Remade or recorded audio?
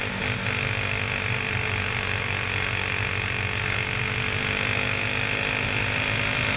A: recorded